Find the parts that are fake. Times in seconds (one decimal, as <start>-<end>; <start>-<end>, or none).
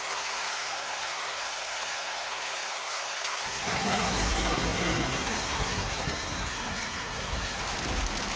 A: 0.0-7.6